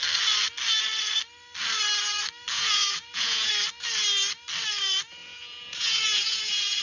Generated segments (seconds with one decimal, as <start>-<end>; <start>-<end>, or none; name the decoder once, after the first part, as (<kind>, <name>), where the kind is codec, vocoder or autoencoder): 2.5-3.5 (vocoder, Vocos); 5.2-6.8

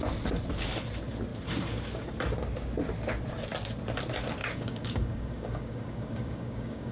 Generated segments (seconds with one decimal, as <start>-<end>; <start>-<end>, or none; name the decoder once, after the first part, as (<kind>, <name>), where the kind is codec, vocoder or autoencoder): 4.4-6.9 (codec, DAC)

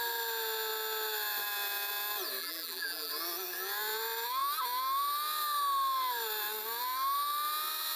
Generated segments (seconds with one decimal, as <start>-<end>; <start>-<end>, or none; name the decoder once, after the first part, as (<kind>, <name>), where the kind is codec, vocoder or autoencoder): 2.4-3.1 (vocoder, BigVGAN v2)

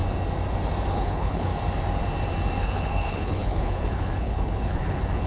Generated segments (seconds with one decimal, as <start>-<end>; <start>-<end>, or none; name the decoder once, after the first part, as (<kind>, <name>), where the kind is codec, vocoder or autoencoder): 0.9-1.5 (codec, HILCodec); 2.6-5.3

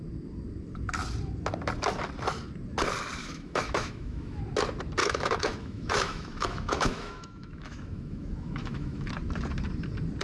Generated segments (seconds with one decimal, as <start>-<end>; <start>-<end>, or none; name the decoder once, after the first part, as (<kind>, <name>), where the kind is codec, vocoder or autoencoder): 3.2-4.4 (autoencoder, DAC-VAE); 5.0-9.1

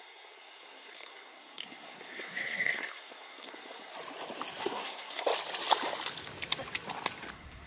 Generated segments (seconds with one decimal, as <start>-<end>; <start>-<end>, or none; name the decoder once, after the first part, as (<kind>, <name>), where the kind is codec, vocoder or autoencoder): 0.0-3.9 (codec, SNAC); 4.6-5.3; 7.3-7.7